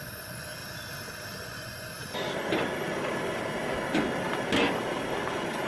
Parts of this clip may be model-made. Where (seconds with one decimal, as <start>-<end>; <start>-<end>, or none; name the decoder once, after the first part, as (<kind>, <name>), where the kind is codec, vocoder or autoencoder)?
0.0-0.6 (vocoder, Vocos); 1.4-1.9; 5.3-5.7